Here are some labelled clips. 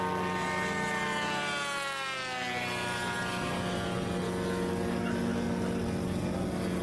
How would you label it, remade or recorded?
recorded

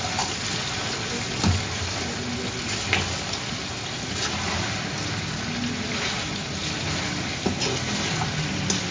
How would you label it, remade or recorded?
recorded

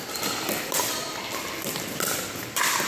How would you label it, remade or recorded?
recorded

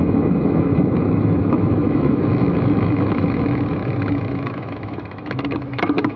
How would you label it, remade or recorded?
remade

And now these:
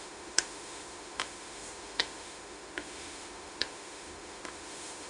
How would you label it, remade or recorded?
remade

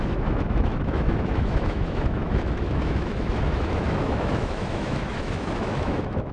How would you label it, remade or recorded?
remade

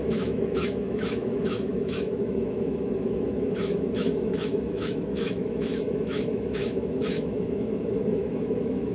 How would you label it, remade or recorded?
remade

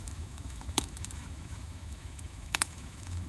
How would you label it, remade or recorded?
remade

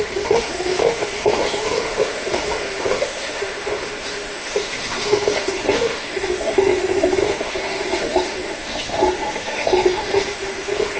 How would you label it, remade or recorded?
remade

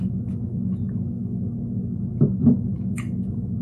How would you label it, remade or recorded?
remade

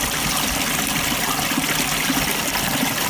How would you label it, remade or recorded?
recorded